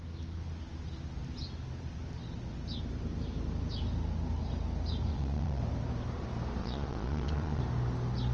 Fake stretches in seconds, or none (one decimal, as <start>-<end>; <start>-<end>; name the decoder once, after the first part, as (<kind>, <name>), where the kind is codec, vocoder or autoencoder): 5.1-5.6 (vocoder, Vocos); 6.6-7.6